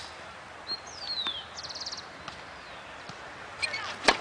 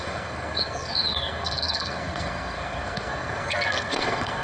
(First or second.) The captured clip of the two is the first